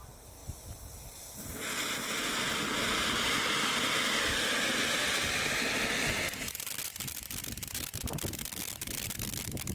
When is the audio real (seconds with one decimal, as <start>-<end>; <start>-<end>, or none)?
0.0-9.7